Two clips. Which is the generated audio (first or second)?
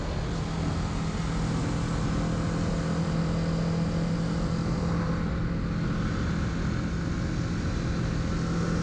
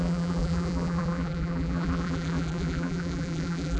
second